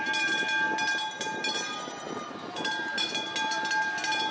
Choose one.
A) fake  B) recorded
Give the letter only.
B